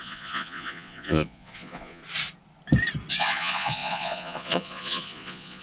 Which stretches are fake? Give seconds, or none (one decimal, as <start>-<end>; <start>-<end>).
0.0-2.0; 3.1-5.6